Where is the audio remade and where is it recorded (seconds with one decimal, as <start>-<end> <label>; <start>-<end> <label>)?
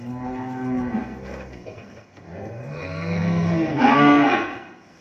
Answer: 0.0-5.0 remade